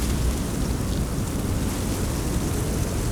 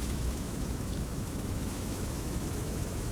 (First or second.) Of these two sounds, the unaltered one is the first